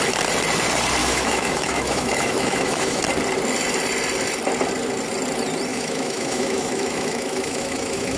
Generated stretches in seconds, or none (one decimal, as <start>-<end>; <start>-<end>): 1.0-3.0; 5.7-8.2